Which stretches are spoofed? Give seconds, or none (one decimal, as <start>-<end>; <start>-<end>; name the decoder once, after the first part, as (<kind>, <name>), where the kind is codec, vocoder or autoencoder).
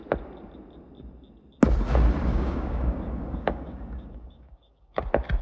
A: 2.3-5.0 (codec, DAC)